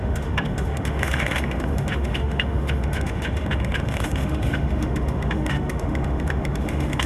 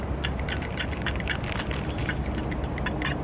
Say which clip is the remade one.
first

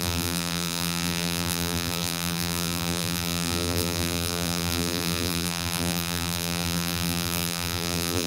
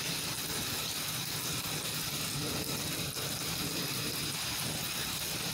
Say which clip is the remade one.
first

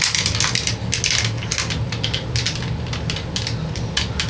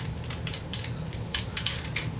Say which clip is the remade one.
second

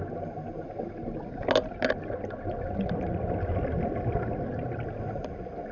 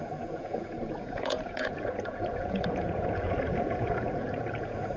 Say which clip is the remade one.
second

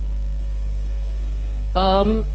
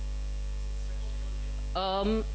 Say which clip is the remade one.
first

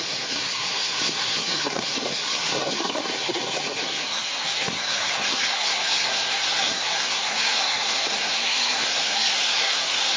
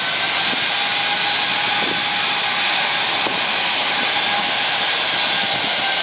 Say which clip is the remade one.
first